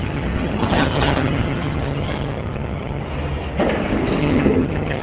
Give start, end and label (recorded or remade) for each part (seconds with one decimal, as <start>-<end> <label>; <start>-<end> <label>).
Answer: 0.0-3.0 remade; 3.0-4.2 recorded; 4.2-5.0 remade